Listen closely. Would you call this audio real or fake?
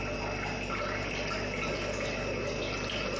real